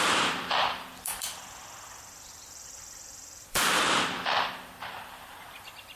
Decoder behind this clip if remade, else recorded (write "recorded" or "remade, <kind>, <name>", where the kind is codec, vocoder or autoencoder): remade, vocoder, BigVGAN v2